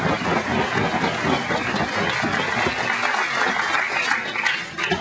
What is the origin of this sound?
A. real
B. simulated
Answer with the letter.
A